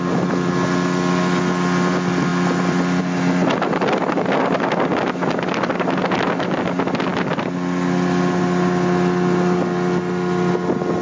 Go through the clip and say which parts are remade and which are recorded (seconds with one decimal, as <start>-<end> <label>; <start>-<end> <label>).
0.0-11.0 recorded